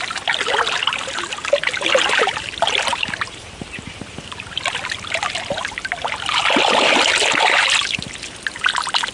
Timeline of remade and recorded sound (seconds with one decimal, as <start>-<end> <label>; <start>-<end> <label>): 0.0-2.9 recorded; 2.9-4.2 remade; 4.2-9.1 recorded